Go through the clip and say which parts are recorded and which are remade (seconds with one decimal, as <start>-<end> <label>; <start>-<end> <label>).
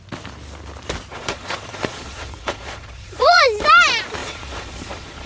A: 0.0-1.1 recorded; 1.1-3.4 remade; 3.4-4.2 recorded; 4.2-5.3 remade